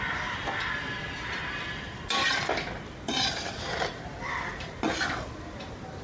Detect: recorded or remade recorded